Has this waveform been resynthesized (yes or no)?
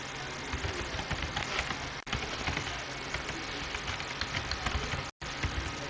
no